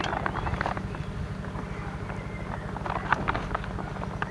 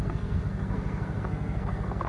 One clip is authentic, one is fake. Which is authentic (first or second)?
first